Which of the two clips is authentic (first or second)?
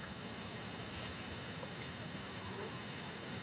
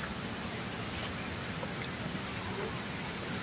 second